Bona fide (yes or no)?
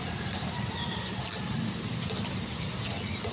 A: yes